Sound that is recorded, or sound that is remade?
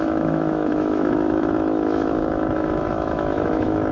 remade